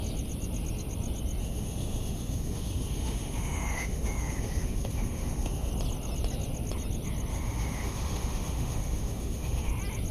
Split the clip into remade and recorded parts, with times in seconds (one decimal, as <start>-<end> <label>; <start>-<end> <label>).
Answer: 0.0-1.4 recorded; 1.4-5.7 remade; 5.7-7.3 recorded; 7.3-9.7 remade; 9.7-10.1 recorded